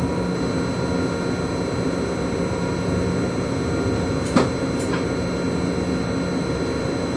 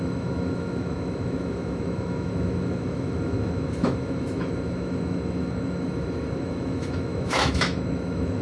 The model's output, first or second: second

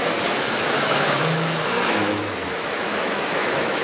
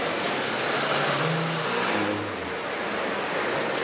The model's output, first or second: first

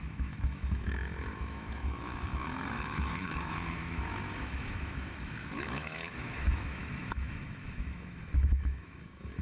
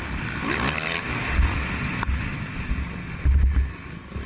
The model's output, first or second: first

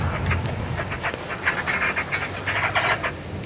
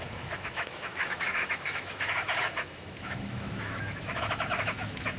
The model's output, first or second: second